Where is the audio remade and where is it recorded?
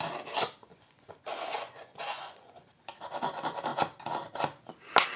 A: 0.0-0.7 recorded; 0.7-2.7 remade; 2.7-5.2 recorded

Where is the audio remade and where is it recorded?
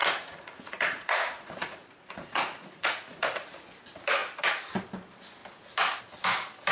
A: 0.0-3.6 remade; 3.6-6.7 recorded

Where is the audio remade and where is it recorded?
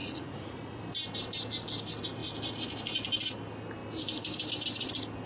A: 0.0-0.8 remade; 0.8-5.3 recorded